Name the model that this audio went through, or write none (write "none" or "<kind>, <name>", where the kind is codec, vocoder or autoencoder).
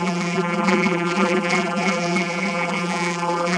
vocoder, BigVGAN v2